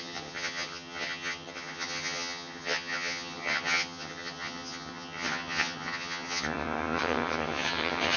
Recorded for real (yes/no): no